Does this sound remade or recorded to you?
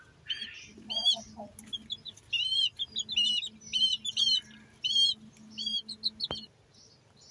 recorded